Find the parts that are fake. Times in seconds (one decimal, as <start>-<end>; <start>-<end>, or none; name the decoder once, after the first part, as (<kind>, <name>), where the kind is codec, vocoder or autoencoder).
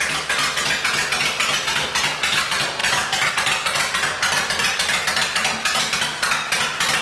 none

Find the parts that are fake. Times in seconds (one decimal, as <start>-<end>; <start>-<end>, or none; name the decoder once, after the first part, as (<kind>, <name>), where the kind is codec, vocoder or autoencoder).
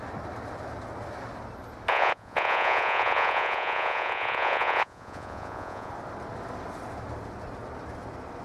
1.9-5.9 (vocoder, Vocos)